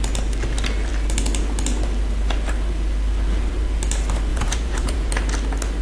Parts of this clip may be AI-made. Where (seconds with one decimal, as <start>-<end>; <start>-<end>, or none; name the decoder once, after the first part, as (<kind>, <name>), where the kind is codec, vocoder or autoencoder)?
4.3-5.1 (vocoder, Vocos)